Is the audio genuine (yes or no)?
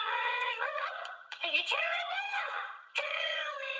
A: no